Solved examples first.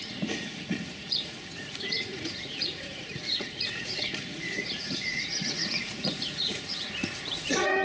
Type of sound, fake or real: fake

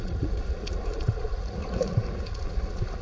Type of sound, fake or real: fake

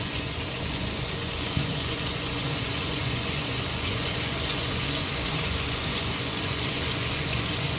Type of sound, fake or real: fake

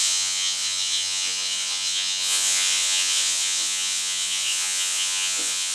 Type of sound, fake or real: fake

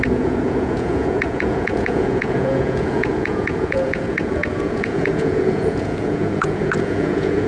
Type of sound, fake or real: fake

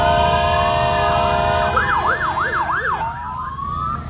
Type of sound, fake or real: real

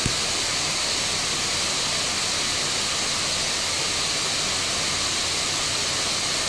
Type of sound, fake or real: real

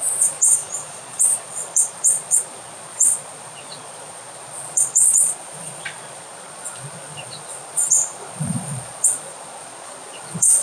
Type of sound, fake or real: fake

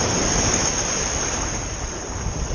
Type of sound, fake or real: real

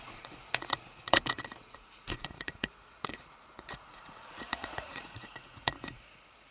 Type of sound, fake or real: fake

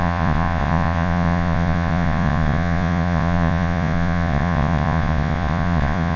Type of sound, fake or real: fake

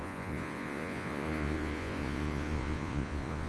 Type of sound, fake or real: fake